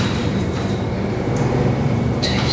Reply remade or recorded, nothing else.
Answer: remade